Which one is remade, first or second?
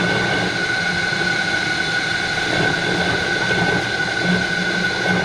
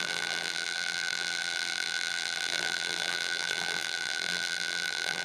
second